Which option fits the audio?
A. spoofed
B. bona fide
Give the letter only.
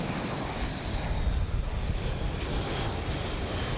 B